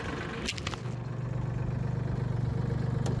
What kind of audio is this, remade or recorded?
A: recorded